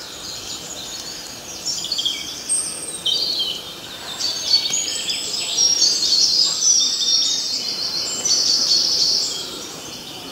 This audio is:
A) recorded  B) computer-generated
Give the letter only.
B